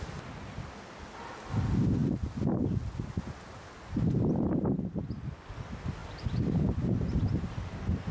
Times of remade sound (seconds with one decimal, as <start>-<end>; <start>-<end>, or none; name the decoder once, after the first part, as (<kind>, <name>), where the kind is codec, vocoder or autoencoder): 6.0-8.1 (vocoder, BigVGAN v2)